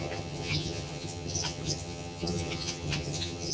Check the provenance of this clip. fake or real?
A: fake